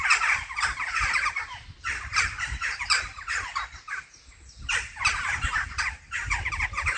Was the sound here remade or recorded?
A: recorded